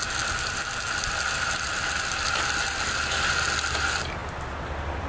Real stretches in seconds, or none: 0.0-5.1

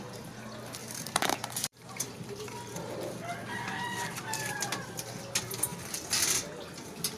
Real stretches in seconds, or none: 0.0-0.8; 5.1-5.7; 6.7-7.2

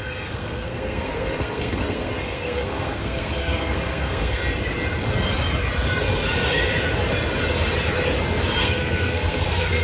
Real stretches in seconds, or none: 4.4-8.6